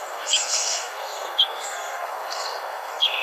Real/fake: fake